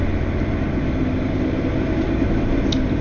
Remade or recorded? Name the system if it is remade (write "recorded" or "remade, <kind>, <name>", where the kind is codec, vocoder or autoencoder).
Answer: recorded